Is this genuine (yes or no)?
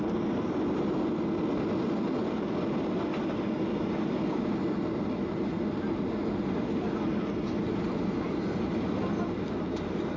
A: yes